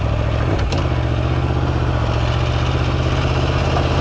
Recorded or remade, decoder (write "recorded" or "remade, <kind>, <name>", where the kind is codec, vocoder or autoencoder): recorded